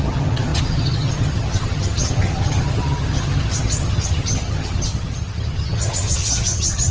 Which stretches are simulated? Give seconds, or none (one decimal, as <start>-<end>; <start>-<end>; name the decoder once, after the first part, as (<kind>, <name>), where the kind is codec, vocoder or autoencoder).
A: 0.0-6.9 (vocoder, HiFi-GAN)